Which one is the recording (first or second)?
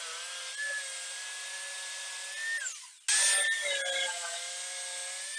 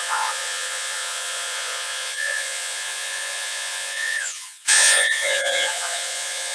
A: first